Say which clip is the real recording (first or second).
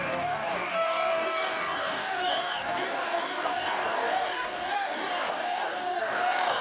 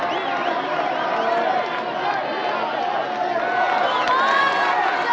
second